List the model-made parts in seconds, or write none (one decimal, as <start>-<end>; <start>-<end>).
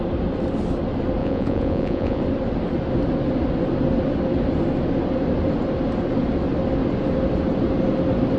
1.2-2.2